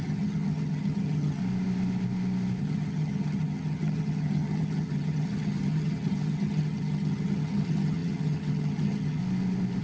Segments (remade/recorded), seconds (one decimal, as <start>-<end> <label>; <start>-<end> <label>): 0.0-1.4 remade; 1.4-2.6 recorded; 2.6-9.2 remade; 9.2-9.8 recorded

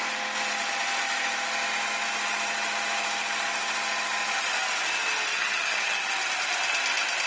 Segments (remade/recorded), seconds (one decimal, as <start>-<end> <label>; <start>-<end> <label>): 0.0-5.3 recorded; 5.3-6.1 remade; 6.1-7.3 recorded